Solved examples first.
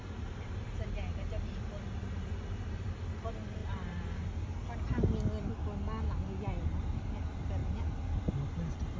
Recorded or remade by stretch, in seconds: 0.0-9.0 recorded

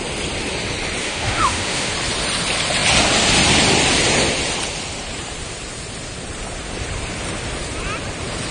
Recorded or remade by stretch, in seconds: 0.0-1.0 recorded; 1.0-1.9 remade; 1.9-8.5 recorded

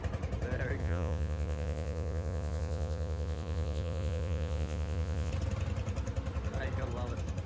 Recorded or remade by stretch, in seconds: 0.0-0.8 recorded; 0.8-5.3 remade; 5.3-7.5 recorded

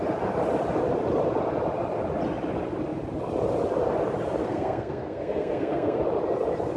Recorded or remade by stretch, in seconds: 0.0-4.4 recorded; 4.4-6.0 remade; 6.0-6.8 recorded

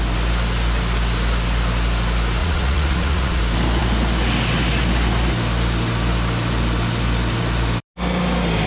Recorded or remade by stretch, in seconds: 0.0-2.4 recorded; 2.4-3.4 remade; 3.4-8.7 recorded